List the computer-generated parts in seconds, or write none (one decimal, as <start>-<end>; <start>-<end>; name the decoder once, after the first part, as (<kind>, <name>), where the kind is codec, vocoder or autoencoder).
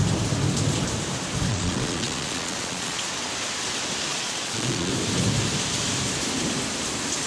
1.5-3.1 (vocoder, Vocos); 4.1-4.9